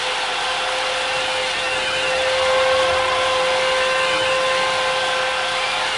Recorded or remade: recorded